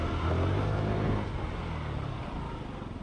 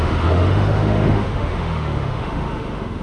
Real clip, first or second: first